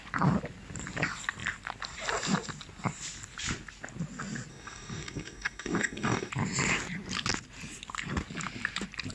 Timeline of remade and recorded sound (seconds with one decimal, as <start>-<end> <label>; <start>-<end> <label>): 0.0-4.5 recorded; 4.5-6.3 remade; 6.3-9.1 recorded